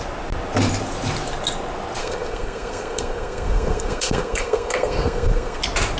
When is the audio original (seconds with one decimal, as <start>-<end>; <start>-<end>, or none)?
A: 0.0-2.0; 5.6-6.0